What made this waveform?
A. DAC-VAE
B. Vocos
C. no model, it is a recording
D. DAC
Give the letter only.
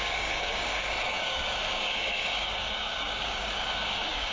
D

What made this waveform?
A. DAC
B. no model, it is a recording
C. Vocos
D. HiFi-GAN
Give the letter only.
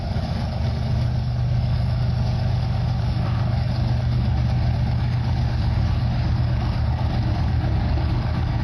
A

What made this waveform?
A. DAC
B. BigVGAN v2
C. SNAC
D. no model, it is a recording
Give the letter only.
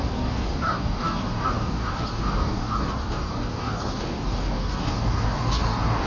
A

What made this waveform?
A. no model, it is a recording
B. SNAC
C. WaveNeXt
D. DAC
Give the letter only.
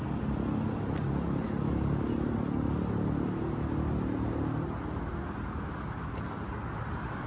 A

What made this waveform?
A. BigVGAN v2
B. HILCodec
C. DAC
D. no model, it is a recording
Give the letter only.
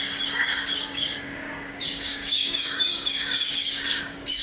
C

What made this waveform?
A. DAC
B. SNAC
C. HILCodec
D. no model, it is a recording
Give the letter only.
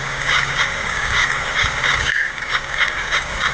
A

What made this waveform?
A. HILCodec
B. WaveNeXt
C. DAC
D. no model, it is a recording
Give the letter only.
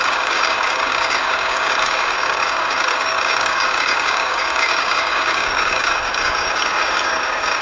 C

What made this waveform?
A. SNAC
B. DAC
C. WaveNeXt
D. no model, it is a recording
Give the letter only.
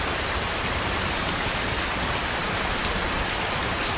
D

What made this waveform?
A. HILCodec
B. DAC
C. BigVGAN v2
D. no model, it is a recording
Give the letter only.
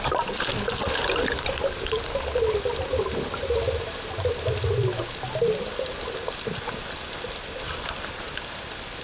D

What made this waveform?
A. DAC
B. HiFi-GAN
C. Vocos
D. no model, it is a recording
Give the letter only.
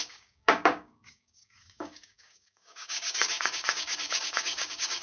A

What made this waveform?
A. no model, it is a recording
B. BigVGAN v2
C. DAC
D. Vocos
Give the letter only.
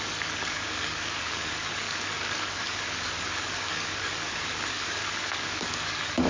C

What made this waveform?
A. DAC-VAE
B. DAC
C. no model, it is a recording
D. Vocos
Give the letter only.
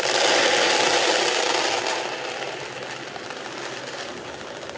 C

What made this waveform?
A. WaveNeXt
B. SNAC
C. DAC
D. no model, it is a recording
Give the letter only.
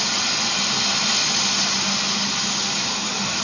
D